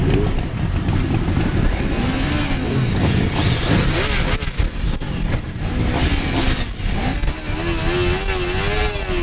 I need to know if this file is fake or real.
real